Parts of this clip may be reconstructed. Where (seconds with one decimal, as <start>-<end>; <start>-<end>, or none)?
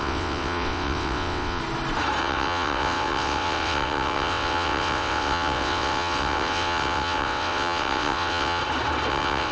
0.0-1.6; 2.2-8.6; 9.1-9.5